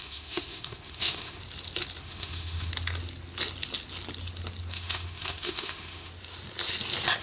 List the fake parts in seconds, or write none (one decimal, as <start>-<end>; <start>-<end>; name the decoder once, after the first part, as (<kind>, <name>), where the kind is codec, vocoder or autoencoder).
0.0-1.4 (autoencoder, DAC-VAE); 2.0-2.7; 4.7-6.1